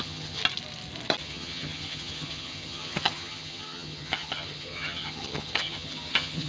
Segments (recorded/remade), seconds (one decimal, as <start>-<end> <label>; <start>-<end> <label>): 0.0-0.4 remade; 0.4-1.2 recorded; 1.2-6.5 remade